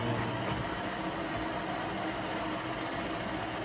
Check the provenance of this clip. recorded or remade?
recorded